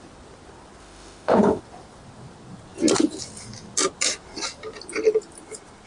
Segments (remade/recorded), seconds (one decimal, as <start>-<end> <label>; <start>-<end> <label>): 0.0-0.8 recorded; 0.8-1.6 remade; 1.6-5.9 recorded